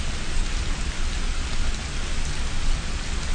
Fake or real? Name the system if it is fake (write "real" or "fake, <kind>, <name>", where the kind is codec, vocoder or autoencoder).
real